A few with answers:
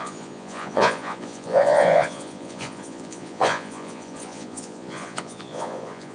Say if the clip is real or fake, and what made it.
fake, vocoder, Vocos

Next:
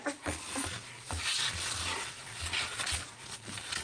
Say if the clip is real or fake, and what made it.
fake, vocoder, Vocos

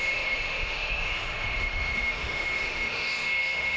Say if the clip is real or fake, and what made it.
fake, autoencoder, DAC-VAE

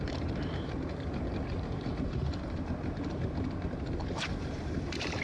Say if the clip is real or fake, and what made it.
fake, vocoder, BigVGAN v2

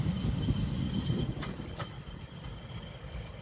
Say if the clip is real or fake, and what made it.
real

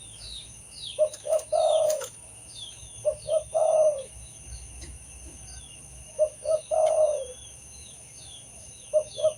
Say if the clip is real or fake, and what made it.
fake, autoencoder, DAC-VAE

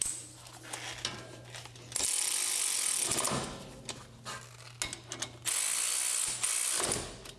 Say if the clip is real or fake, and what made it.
real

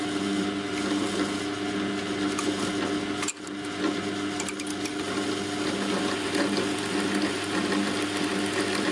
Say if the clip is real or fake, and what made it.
real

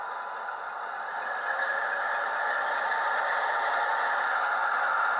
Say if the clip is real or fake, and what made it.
real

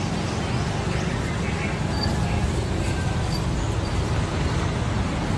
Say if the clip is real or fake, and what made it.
real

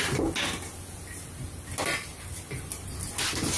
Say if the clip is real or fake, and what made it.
real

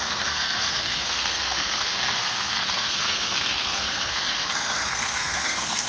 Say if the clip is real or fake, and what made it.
fake, codec, SNAC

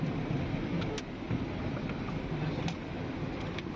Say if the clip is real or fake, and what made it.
real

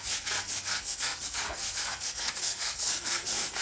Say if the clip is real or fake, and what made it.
fake, codec, SNAC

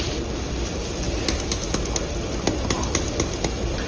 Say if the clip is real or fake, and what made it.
real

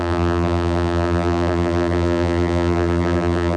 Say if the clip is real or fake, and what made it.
fake, vocoder, BigVGAN v2